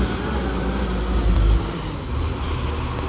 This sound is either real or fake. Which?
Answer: real